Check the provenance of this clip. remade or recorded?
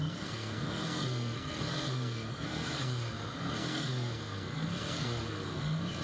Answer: remade